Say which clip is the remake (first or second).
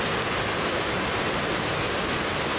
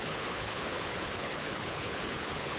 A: second